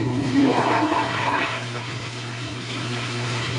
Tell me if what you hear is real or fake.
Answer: fake